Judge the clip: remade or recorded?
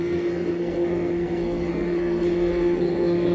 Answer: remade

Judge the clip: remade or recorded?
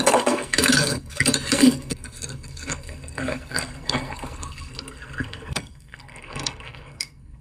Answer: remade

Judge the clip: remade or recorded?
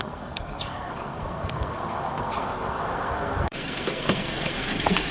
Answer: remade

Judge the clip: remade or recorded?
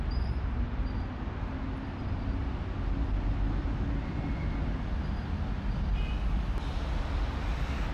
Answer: recorded